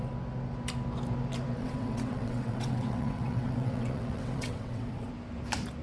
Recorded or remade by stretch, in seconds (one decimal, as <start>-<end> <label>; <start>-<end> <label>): 0.0-1.6 recorded; 1.6-5.1 remade; 5.1-5.8 recorded